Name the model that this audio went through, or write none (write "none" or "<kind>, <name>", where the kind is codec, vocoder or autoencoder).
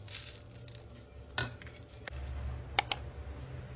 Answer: none